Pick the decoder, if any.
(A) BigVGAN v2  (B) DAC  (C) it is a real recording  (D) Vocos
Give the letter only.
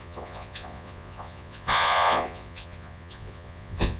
D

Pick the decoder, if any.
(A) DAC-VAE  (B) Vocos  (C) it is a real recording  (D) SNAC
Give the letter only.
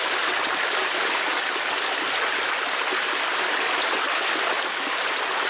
C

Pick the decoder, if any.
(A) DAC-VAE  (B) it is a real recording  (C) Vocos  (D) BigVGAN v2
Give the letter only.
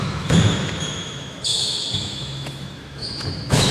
A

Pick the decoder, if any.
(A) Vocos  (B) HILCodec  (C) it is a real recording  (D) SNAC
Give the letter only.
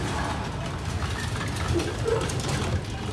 C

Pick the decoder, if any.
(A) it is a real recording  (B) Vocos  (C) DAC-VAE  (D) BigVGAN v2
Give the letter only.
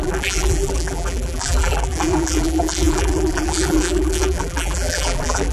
D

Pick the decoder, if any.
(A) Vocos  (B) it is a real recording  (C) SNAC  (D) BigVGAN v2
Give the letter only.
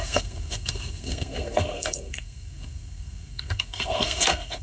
C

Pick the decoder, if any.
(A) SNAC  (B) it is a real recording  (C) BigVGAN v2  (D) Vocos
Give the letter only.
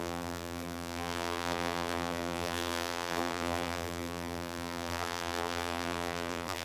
C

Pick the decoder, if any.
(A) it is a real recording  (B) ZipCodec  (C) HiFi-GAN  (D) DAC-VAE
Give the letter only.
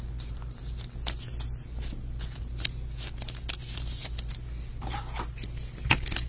A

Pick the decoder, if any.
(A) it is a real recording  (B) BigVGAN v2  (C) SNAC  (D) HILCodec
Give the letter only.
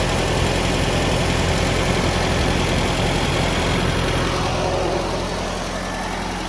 A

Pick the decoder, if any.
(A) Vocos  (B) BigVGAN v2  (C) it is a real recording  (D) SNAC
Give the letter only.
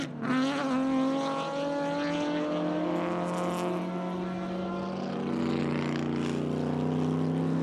C